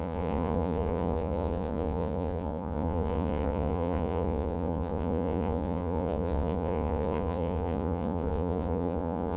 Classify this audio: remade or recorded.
remade